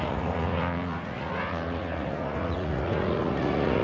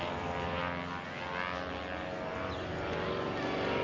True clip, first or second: second